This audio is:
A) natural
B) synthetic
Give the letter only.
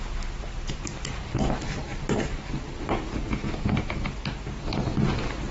A